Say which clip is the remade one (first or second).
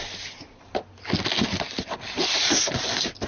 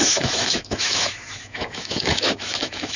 second